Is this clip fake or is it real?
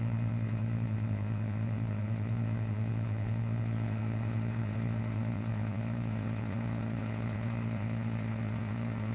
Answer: fake